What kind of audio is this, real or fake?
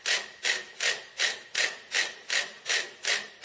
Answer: real